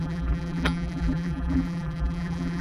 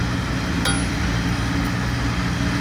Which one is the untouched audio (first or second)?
second